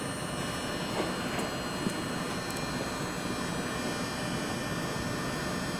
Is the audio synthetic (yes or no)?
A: no